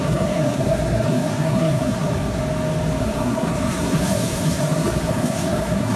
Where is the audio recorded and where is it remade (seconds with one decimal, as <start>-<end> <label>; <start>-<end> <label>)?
0.0-2.4 remade; 2.4-3.0 recorded; 3.0-6.0 remade